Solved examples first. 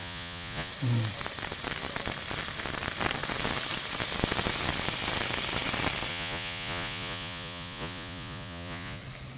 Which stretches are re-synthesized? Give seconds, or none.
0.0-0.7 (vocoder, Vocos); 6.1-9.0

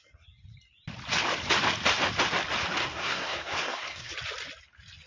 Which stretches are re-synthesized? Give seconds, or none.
2.9-4.1 (codec, SNAC)